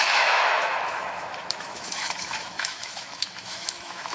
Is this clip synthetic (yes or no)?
yes